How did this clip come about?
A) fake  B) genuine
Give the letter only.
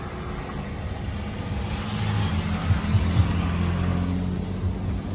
B